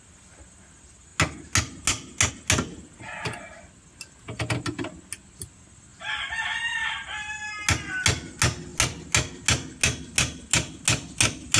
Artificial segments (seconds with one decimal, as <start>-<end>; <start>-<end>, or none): none